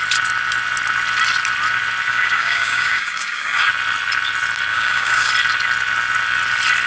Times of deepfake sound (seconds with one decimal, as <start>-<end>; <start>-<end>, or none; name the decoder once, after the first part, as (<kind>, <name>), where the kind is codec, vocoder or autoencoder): 2.1-3.7 (codec, DAC); 4.7-5.3